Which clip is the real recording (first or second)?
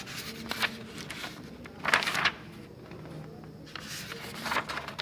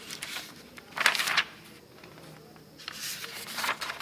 first